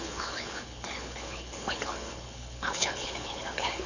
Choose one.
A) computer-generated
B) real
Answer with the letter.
A